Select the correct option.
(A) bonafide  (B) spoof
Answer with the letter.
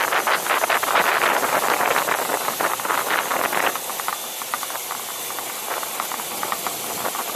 A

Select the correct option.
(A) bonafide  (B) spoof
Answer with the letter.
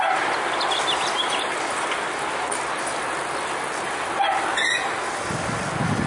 A